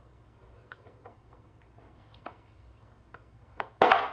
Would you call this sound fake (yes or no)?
yes